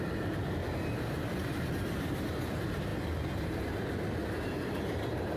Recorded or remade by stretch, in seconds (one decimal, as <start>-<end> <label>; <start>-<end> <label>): 0.0-5.4 recorded